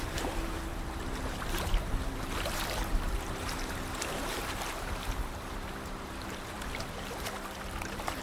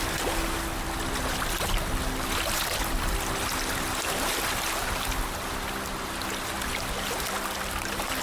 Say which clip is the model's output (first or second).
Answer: first